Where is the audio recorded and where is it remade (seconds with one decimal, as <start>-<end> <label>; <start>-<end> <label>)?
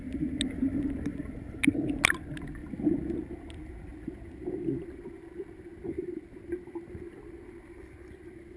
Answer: 0.0-8.6 recorded